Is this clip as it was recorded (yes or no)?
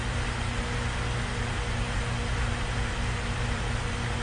yes